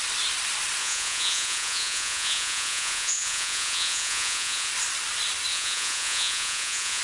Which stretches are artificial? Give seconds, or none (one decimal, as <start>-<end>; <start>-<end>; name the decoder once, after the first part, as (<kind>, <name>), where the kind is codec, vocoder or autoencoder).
0.8-4.7 (vocoder, Vocos); 5.5-7.0